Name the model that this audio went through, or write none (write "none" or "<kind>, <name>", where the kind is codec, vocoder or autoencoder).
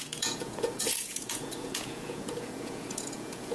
vocoder, Vocos